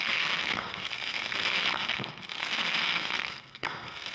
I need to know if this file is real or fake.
fake